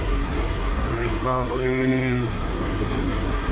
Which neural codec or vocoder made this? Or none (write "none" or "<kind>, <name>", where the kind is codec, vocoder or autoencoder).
codec, SNAC